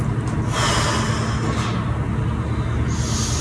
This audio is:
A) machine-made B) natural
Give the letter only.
B